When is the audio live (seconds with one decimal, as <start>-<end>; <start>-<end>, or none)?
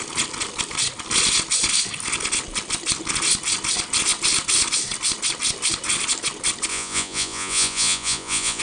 0.0-6.7